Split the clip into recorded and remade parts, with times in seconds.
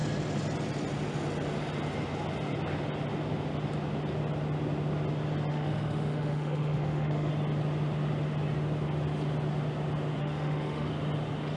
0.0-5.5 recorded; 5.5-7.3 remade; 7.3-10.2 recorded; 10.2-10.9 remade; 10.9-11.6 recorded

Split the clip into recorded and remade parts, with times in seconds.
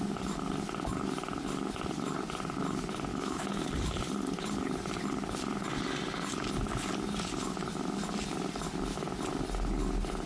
0.0-3.1 recorded; 3.1-3.7 remade; 3.7-10.3 recorded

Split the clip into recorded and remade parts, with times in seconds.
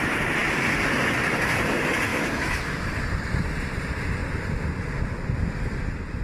0.0-2.1 recorded; 2.1-2.9 remade; 2.9-6.2 recorded